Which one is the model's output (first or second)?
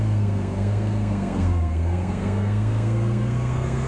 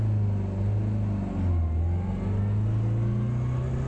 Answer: first